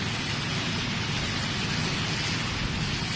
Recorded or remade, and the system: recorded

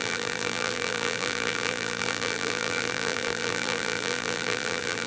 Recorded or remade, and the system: remade, vocoder, BigVGAN v2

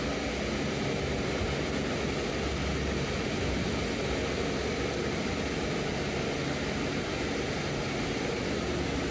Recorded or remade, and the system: recorded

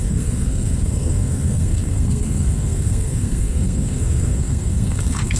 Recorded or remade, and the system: remade, codec, SNAC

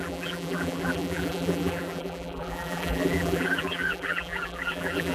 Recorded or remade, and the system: remade, vocoder, BigVGAN v2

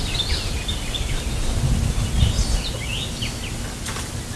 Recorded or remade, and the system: recorded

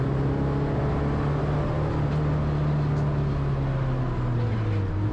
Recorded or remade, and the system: recorded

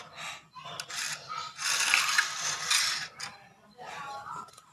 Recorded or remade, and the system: recorded